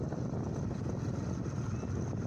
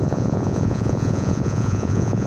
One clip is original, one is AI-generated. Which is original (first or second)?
first